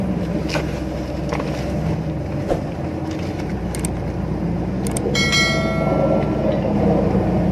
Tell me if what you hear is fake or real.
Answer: real